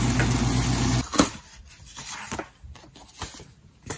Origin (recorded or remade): recorded